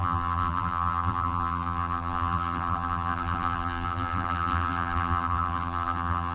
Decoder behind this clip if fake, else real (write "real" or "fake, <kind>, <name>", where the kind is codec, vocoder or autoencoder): fake, vocoder, BigVGAN v2